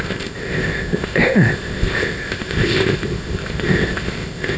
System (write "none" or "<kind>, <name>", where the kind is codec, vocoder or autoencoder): codec, ZipCodec